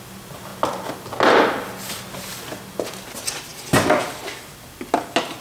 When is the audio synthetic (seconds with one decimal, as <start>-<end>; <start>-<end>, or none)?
none